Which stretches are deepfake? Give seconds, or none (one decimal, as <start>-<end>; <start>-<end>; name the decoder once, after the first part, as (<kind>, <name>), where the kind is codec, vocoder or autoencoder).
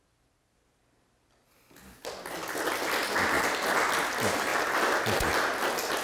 none